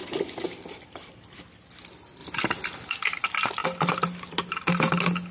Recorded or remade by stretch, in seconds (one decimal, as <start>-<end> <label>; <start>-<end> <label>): 0.0-5.3 recorded